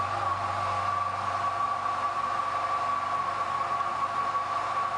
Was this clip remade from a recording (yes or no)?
no